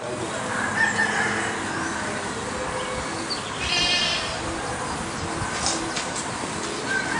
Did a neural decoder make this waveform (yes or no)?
no